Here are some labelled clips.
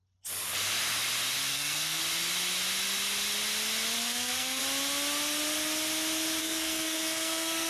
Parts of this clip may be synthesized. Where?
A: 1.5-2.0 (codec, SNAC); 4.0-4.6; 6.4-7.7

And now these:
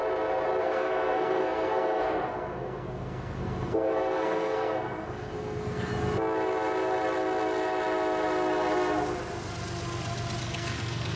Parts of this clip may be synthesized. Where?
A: 0.6-5.9 (codec, SNAC); 10.4-11.2

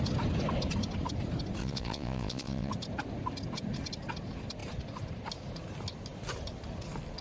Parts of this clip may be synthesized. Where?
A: 1.6-2.7 (vocoder, Vocos)

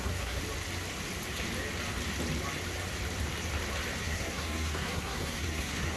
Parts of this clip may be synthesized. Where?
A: 0.0-0.4 (codec, SNAC); 4.0-6.0